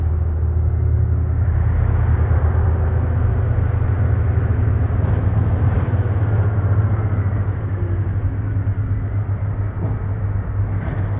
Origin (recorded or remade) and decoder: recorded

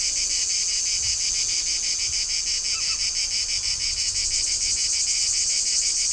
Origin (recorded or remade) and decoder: recorded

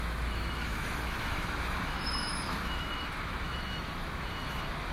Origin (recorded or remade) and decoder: remade, autoencoder, DAC-VAE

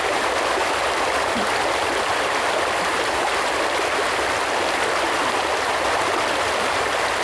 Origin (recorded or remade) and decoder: recorded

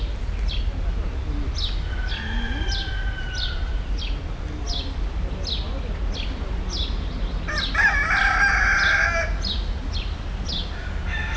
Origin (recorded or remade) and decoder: recorded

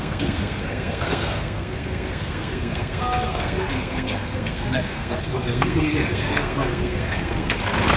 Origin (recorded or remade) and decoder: remade, codec, SNAC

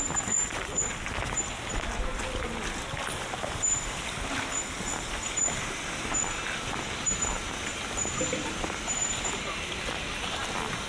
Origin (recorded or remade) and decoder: recorded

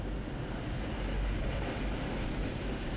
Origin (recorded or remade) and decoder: recorded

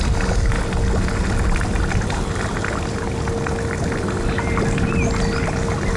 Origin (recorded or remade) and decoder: recorded